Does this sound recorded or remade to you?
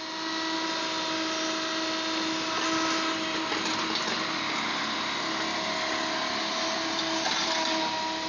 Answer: recorded